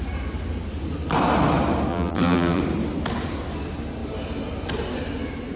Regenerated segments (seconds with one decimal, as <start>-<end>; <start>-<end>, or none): 1.9-2.6